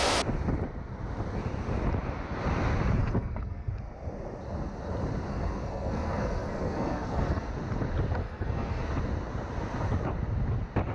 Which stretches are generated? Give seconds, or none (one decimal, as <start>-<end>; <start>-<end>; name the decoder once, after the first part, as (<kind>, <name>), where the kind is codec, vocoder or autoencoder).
3.0-3.7 (codec, SNAC); 5.3-7.5; 8.2-8.8